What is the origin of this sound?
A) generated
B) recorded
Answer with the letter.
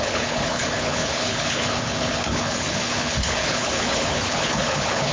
A